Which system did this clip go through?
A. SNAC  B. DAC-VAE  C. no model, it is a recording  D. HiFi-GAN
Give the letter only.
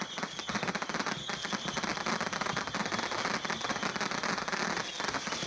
C